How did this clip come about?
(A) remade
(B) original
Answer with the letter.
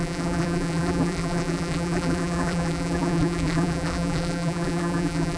A